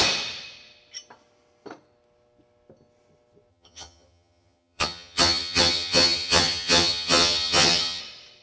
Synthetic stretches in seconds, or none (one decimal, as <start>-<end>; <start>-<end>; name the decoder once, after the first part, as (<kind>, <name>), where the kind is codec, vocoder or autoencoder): 3.5-8.0 (vocoder, HiFi-GAN)